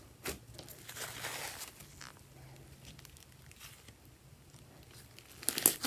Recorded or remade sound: recorded